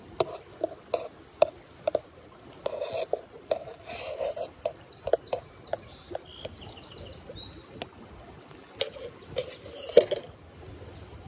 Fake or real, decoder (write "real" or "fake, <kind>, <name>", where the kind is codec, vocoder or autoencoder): real